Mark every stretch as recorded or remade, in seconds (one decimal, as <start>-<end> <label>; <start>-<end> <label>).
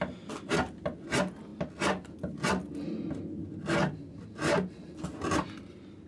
0.0-6.1 recorded